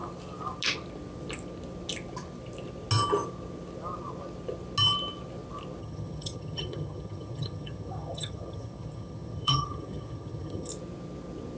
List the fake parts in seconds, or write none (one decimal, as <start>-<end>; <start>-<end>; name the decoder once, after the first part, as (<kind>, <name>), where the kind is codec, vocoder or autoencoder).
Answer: 5.8-10.7 (vocoder, HiFi-GAN)